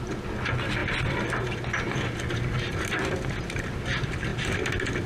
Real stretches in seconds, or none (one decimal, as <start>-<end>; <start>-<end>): 0.0-5.1